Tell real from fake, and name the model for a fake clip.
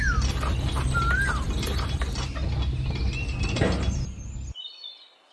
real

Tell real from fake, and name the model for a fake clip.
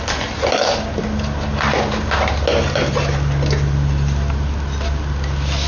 real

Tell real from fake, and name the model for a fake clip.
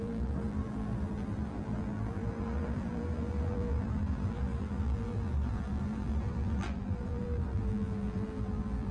fake, vocoder, BigVGAN v2